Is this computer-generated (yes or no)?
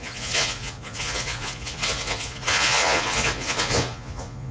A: yes